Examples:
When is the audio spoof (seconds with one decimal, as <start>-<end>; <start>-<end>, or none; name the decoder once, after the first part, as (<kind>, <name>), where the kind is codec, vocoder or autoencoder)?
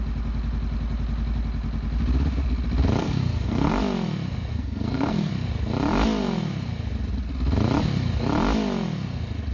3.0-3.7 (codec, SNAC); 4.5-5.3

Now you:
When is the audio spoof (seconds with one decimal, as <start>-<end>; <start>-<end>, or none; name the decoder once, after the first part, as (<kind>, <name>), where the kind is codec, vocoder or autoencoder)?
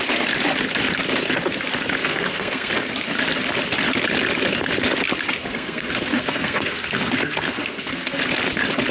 2.0-2.7 (codec, SNAC); 5.4-8.2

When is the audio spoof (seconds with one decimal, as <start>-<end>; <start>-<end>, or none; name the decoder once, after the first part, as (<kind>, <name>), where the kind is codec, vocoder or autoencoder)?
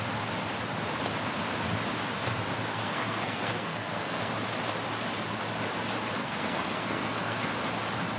2.7-4.3 (codec, SNAC); 6.2-7.5